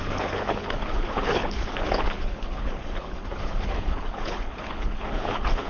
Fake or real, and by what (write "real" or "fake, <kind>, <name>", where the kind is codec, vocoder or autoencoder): fake, codec, HILCodec